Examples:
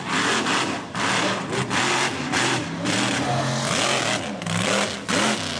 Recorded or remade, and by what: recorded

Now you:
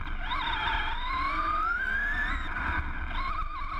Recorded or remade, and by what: recorded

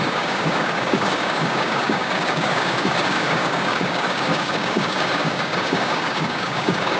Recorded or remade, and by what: remade, codec, DAC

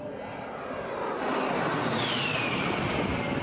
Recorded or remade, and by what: recorded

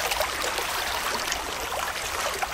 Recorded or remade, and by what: recorded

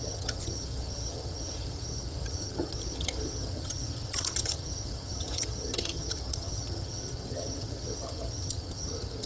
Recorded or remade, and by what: remade, vocoder, HiFi-GAN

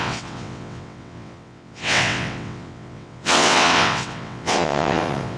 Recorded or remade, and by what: remade, vocoder, WaveNeXt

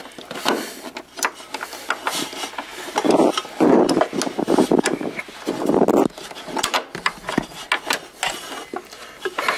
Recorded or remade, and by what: recorded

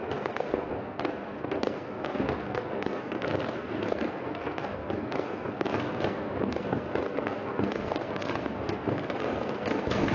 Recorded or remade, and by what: remade, codec, SNAC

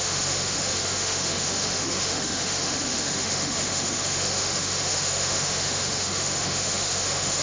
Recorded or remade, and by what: remade, autoencoder, DAC-VAE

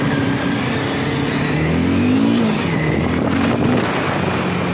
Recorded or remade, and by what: recorded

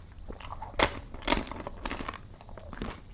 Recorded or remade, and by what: recorded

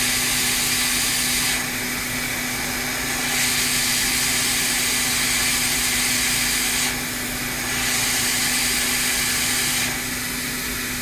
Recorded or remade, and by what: recorded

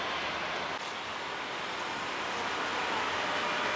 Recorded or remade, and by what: recorded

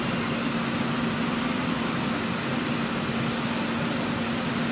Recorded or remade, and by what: recorded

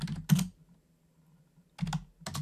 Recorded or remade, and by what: recorded